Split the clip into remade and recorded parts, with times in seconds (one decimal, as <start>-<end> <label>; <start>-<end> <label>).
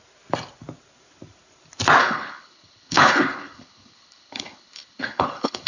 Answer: 0.0-2.0 recorded; 2.0-5.7 remade